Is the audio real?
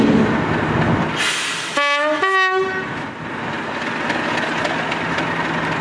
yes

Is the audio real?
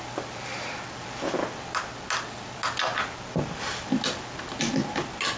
yes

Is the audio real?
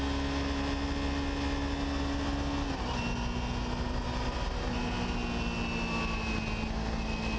yes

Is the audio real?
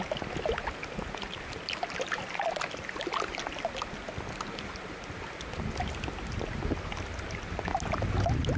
yes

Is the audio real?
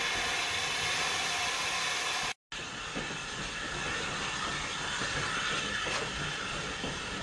yes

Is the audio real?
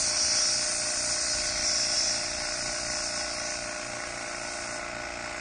yes